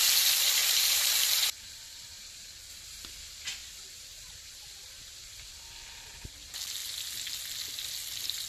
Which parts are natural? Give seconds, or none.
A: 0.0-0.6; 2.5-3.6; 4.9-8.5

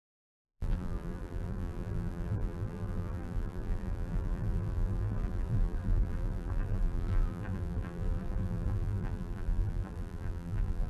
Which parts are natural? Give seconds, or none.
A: none

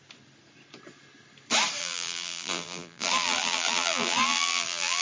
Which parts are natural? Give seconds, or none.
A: 0.0-1.8

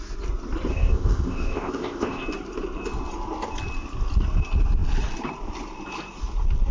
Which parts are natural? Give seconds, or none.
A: 0.0-0.7; 2.2-6.7